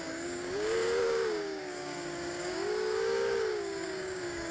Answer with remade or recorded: remade